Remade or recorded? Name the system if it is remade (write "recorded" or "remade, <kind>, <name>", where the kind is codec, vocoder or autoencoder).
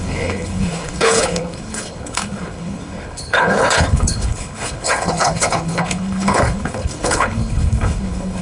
remade, codec, HILCodec